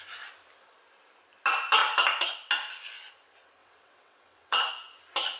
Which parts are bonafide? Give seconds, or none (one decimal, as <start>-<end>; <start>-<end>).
0.0-3.6; 4.7-5.4